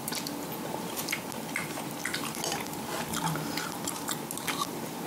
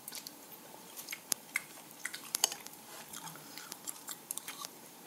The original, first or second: first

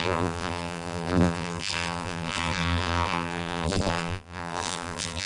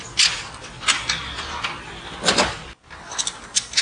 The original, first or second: second